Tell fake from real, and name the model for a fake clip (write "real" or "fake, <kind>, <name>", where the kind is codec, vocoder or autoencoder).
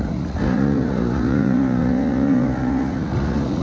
fake, vocoder, Vocos